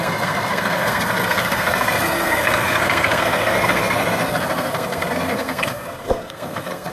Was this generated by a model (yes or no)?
yes